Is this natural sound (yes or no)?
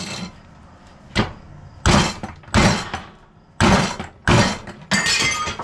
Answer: yes